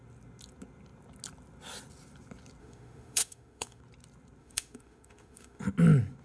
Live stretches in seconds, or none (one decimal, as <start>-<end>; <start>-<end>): 0.0-2.6; 3.8-4.4; 5.6-6.2